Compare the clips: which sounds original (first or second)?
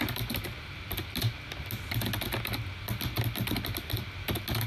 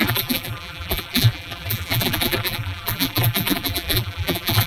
first